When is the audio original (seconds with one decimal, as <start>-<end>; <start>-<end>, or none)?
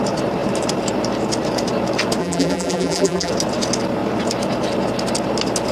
0.0-2.2; 3.3-5.7